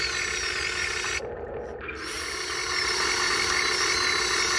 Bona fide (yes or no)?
yes